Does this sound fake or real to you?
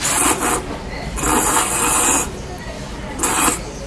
real